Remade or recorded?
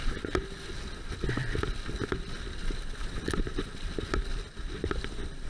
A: recorded